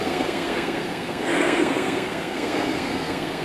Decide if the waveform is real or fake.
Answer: fake